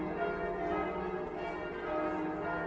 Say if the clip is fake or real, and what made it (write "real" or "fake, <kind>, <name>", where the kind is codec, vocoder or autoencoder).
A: real